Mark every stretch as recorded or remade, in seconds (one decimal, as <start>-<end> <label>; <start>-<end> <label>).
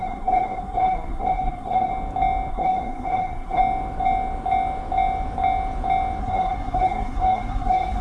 0.0-1.9 remade; 1.9-2.5 recorded; 2.5-3.6 remade; 3.6-6.2 recorded; 6.2-8.0 remade